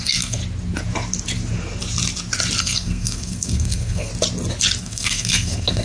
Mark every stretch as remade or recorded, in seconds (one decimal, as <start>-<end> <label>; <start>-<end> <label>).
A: 0.0-0.4 remade; 0.4-2.6 recorded; 2.6-4.1 remade; 4.1-4.8 recorded; 4.8-5.8 remade